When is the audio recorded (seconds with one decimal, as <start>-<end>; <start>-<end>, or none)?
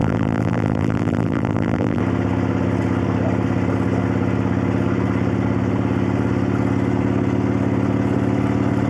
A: 2.0-8.9